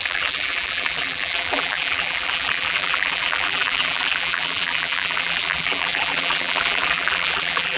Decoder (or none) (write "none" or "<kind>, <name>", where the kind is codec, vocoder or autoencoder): vocoder, BigVGAN v2